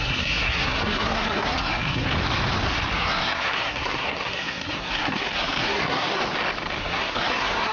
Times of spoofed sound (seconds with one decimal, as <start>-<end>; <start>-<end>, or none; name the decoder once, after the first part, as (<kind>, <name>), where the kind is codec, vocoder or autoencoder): 0.0-2.1 (codec, SNAC); 2.9-6.2; 6.8-7.7